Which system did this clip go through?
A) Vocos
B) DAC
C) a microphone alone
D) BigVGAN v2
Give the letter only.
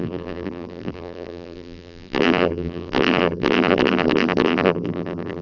D